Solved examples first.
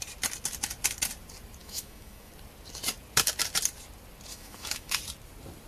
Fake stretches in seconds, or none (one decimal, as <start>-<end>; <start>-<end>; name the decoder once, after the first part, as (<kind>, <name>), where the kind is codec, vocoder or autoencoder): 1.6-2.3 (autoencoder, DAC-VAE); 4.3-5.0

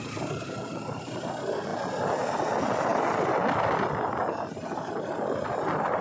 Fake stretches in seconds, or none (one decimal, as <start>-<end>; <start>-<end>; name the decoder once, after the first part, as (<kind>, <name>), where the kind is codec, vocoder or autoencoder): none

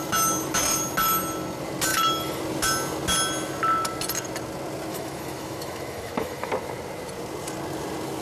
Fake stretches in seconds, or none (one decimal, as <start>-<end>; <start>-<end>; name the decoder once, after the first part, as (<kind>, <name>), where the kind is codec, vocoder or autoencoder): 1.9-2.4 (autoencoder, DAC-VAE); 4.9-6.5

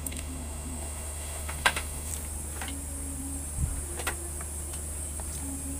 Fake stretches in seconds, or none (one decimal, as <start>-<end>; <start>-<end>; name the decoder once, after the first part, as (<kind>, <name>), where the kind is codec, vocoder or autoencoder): 0.0-2.1 (autoencoder, DAC-VAE)